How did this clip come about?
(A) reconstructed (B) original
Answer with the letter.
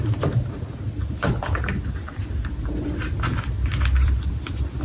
A